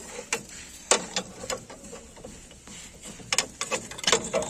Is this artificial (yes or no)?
no